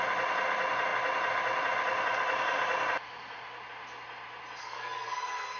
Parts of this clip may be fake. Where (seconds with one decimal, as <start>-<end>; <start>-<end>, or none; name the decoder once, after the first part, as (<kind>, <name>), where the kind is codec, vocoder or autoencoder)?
4.6-5.6 (codec, SNAC)